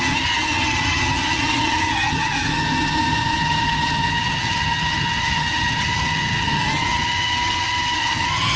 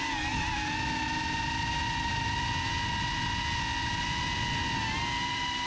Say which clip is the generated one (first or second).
first